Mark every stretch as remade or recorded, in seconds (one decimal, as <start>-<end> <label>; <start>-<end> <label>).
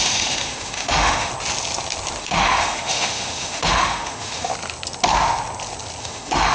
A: 0.0-1.3 remade; 1.3-2.2 recorded; 2.2-4.5 remade; 4.5-6.0 recorded; 6.0-6.5 remade